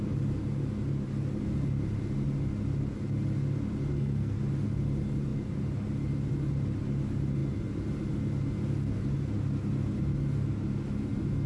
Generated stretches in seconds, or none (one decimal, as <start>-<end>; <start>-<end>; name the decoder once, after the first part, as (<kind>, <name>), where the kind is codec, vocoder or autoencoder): 3.9-4.4 (codec, SNAC)